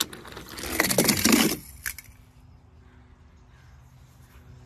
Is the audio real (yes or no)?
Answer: yes